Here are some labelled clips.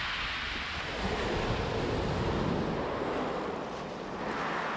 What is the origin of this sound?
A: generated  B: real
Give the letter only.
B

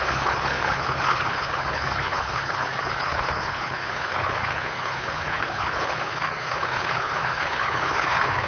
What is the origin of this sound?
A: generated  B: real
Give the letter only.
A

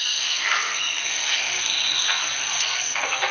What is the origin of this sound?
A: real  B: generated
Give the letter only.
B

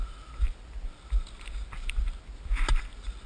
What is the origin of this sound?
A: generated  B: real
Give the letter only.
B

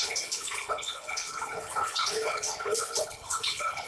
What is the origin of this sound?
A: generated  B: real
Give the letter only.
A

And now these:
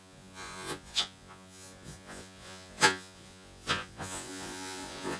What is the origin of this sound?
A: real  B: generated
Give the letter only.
B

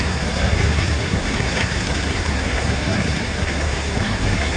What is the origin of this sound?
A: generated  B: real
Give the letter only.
A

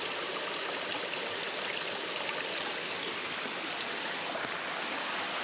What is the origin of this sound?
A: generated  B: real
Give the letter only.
B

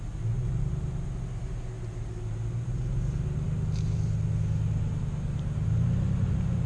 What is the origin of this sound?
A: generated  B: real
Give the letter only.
B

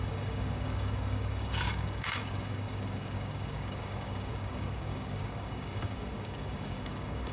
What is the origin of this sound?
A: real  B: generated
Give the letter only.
B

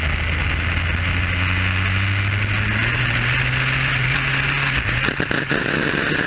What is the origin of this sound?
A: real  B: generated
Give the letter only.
A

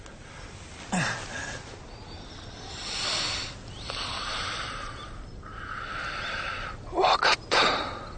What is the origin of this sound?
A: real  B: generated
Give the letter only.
A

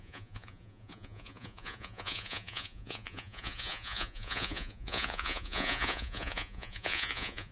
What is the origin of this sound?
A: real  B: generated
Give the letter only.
B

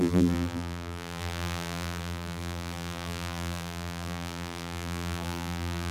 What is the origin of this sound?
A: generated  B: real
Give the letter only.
A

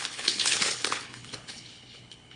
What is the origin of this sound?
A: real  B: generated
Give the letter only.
B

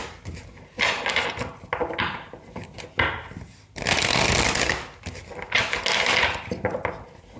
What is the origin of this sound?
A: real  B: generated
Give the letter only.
A